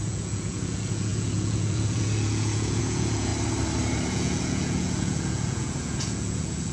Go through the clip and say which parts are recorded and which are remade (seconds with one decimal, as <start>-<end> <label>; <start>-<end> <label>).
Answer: 0.0-3.3 remade; 3.3-4.1 recorded; 4.1-6.7 remade